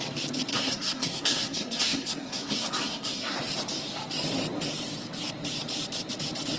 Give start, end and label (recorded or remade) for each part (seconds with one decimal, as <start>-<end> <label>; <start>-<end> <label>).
0.0-0.5 recorded; 0.5-3.4 remade; 3.4-6.6 recorded